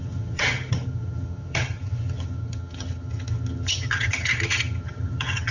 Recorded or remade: remade